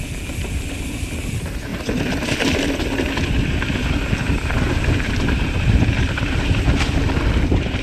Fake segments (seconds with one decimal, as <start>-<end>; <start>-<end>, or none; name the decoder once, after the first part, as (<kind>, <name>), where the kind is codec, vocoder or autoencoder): 4.2-7.8 (vocoder, BigVGAN v2)